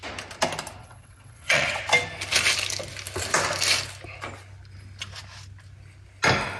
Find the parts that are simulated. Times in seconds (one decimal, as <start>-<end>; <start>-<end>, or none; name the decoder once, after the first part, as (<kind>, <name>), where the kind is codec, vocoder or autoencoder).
0.8-1.8 (vocoder, WaveNeXt)